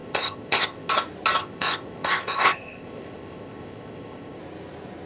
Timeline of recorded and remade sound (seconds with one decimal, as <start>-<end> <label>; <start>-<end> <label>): 0.0-0.9 remade; 0.9-1.4 recorded; 1.4-4.4 remade; 4.4-5.0 recorded